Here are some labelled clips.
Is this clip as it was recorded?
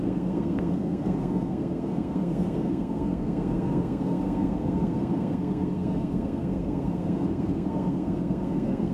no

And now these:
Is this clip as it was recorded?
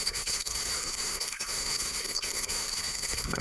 no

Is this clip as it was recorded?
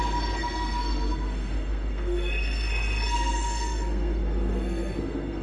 no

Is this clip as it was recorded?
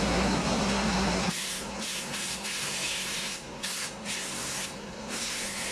no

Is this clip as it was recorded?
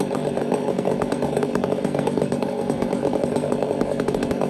no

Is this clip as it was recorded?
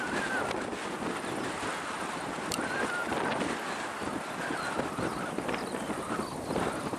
yes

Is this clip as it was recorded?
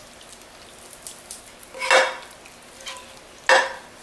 yes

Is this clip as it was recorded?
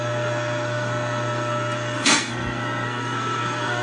no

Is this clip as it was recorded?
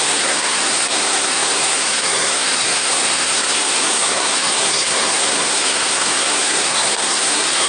no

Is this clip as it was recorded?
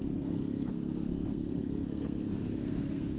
no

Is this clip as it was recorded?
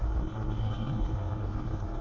no